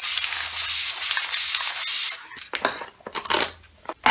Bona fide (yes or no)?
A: yes